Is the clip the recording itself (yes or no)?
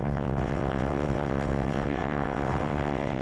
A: no